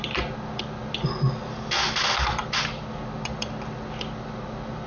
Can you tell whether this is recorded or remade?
recorded